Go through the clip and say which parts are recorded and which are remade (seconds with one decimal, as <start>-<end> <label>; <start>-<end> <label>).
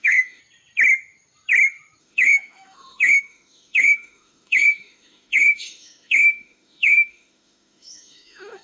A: 0.0-0.4 remade; 0.4-2.0 recorded; 2.0-8.6 remade